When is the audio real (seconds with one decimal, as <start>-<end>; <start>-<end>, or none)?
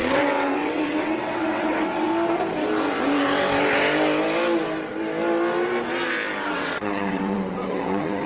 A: 2.1-6.5